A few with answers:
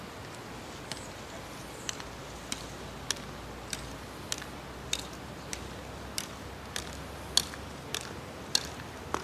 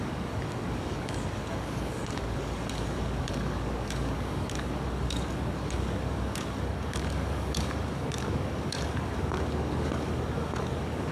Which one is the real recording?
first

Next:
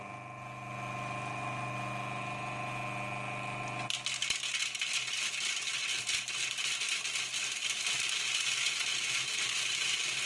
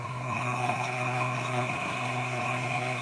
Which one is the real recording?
first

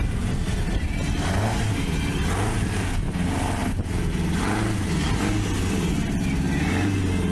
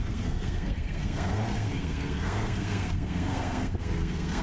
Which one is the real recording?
first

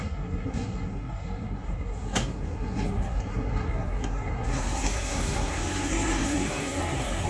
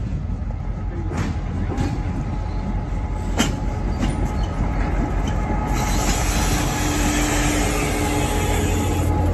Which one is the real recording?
second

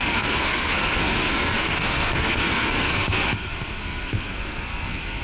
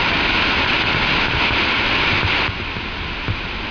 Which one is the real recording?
second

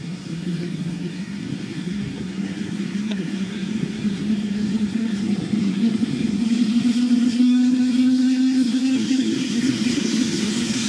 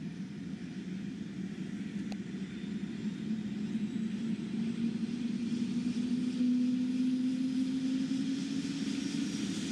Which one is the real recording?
second